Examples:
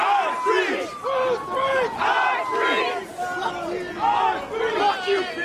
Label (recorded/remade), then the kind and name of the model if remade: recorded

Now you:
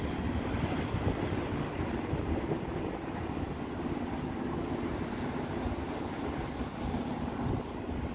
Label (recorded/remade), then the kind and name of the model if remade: recorded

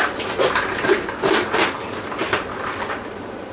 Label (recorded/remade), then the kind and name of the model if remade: recorded